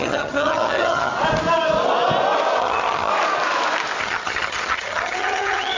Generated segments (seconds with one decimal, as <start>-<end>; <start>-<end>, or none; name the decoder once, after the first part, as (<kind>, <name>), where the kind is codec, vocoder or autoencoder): 0.0-1.1 (vocoder, HiFi-GAN); 2.6-3.1; 4.0-5.8